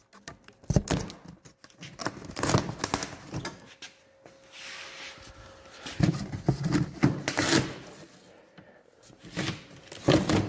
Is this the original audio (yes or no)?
yes